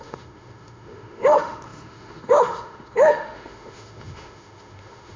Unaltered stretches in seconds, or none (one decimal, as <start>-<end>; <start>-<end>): none